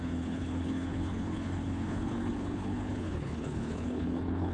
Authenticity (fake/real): fake